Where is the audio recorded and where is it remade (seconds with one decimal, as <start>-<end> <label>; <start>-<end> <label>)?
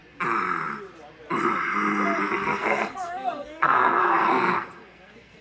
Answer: 0.0-2.2 recorded; 2.2-5.4 remade